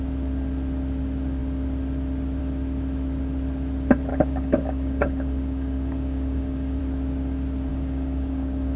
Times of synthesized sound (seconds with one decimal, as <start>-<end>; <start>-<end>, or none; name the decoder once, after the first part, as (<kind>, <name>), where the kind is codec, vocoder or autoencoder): 4.1-6.8 (codec, DAC); 7.7-8.8